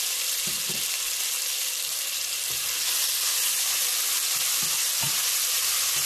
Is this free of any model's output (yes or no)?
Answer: yes